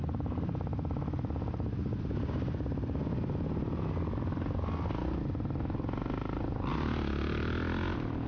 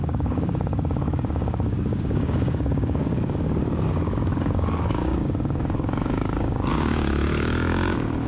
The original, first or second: first